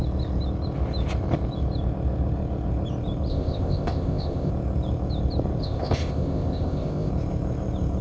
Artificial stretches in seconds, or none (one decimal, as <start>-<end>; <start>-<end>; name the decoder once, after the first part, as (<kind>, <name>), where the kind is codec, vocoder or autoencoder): 3.3-4.5 (codec, ZipCodec); 5.6-7.1